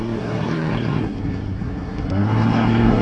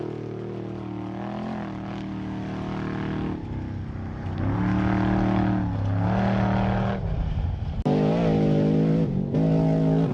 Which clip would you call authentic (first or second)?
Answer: second